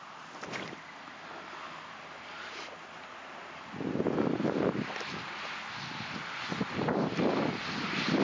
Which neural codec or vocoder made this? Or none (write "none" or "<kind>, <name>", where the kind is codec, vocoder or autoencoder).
none